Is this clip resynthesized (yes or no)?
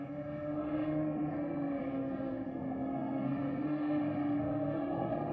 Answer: yes